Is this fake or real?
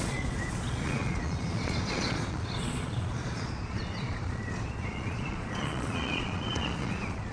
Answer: fake